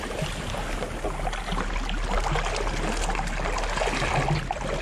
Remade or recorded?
recorded